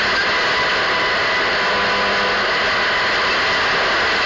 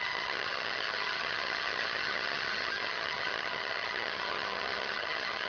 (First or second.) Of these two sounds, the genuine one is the first